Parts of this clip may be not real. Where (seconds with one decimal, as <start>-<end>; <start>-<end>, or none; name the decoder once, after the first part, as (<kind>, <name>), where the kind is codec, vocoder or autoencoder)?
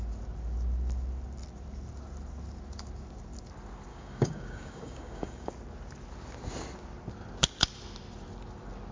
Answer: 3.9-5.5 (codec, DAC)